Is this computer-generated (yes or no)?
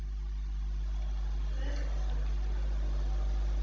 no